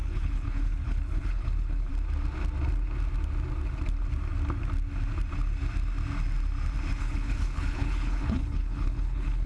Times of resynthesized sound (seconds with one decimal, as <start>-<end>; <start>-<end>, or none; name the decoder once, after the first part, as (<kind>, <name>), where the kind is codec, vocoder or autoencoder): 0.0-1.9 (codec, HILCodec); 7.0-9.5